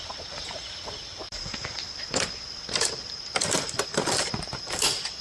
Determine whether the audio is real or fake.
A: fake